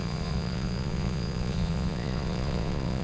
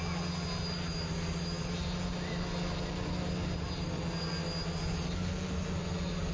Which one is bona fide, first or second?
second